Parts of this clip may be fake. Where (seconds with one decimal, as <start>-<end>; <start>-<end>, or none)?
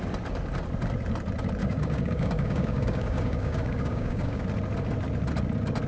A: 1.6-4.4